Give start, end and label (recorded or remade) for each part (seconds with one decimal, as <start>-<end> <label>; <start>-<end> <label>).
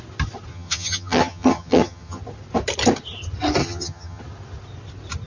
0.0-0.5 recorded; 0.5-2.2 remade; 2.2-3.6 recorded; 3.6-4.2 remade; 4.2-5.3 recorded